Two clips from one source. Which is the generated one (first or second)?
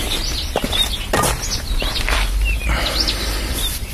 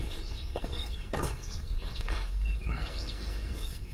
second